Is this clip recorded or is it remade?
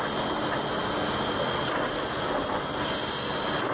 recorded